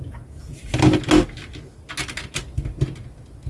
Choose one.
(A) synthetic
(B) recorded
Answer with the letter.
B